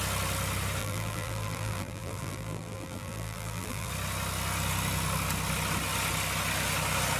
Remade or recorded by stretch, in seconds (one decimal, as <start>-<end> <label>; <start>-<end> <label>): 0.0-0.8 recorded; 0.8-3.9 remade; 3.9-7.2 recorded